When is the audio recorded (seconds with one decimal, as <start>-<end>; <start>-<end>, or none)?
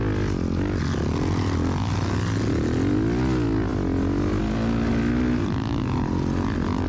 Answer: 0.0-6.9